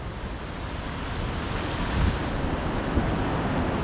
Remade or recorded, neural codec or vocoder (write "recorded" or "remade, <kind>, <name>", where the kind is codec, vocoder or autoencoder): recorded